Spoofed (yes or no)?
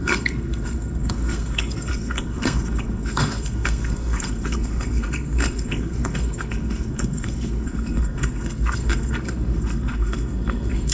yes